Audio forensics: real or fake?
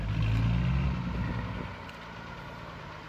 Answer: real